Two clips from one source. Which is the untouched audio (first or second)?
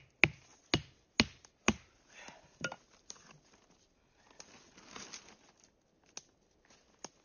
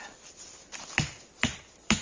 first